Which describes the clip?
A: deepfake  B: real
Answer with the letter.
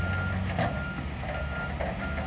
B